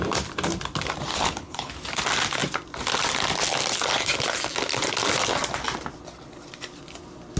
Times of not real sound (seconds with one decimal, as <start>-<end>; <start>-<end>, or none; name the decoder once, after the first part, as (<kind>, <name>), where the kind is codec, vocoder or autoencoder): 1.1-1.7 (codec, HILCodec)